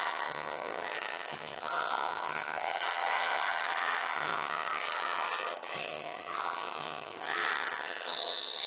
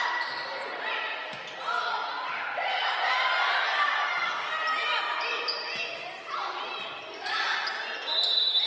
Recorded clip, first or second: second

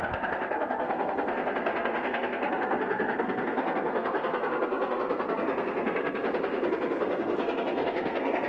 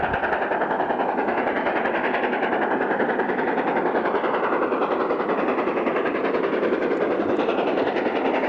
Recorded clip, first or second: second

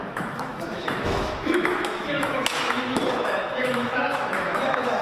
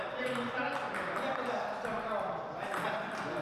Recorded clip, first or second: second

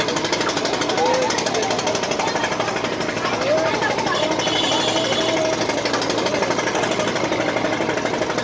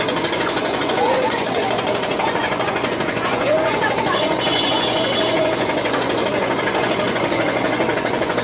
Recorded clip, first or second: first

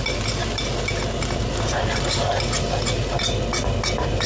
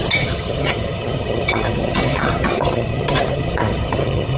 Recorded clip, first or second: first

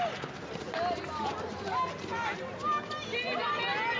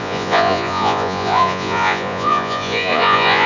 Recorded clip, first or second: first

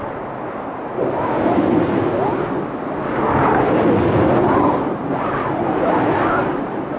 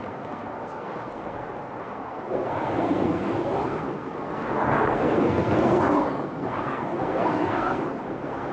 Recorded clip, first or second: first